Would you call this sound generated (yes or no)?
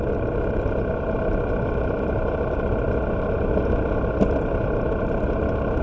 no